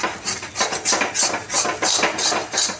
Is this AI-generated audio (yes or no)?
no